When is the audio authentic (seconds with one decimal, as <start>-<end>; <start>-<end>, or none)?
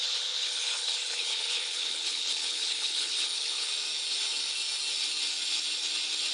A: 3.7-6.3